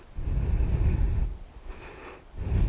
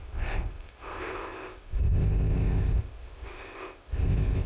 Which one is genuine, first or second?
first